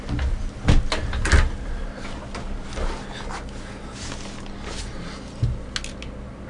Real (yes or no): yes